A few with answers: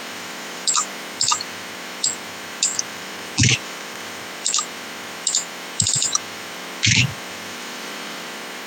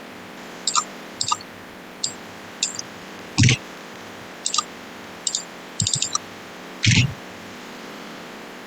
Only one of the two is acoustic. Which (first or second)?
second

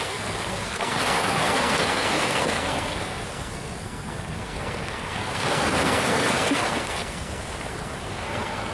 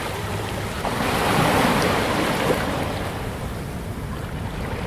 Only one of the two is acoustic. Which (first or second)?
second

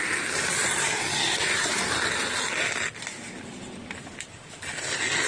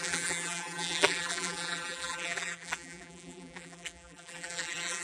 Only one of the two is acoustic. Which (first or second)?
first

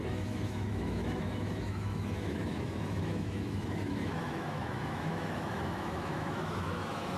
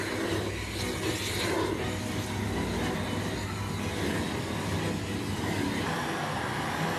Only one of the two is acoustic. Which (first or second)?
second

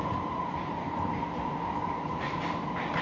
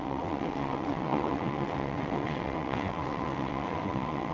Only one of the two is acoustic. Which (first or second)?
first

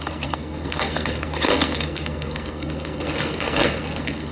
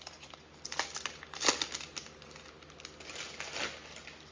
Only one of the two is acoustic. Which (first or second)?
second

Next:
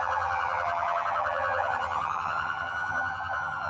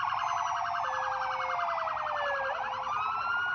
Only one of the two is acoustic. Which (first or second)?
second